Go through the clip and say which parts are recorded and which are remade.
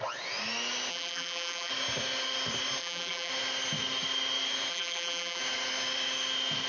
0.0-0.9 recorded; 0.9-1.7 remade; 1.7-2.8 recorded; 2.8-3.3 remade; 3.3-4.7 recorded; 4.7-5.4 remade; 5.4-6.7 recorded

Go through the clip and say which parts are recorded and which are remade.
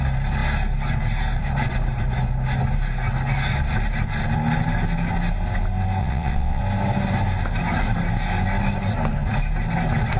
0.0-6.0 recorded; 6.0-6.6 remade; 6.6-10.2 recorded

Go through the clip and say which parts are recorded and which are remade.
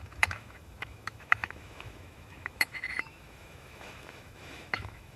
0.0-5.2 remade